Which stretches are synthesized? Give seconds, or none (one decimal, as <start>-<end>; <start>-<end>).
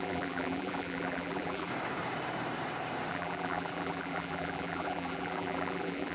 0.0-1.7; 3.1-6.1